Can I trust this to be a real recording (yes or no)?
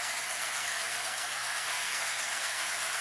no